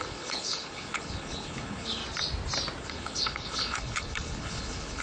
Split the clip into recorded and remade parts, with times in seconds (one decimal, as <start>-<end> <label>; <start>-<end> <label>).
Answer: 0.0-2.0 remade; 2.0-2.8 recorded; 2.8-5.0 remade